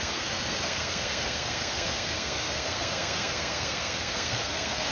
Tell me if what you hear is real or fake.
fake